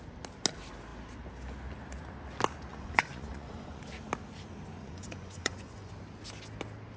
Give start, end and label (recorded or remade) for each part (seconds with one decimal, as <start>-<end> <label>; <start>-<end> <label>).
0.0-2.7 recorded; 2.7-3.8 remade; 3.8-4.8 recorded; 4.8-5.9 remade; 5.9-7.0 recorded